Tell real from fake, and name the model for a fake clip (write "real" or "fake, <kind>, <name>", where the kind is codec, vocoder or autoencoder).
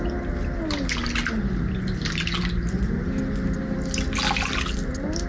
real